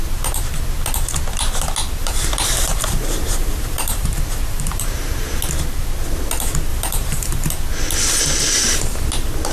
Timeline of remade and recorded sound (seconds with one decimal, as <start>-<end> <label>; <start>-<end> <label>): 0.0-2.0 recorded; 2.0-5.4 remade; 5.4-6.7 recorded; 6.7-7.5 remade; 7.5-9.5 recorded